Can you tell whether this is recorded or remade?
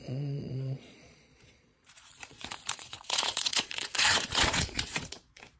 remade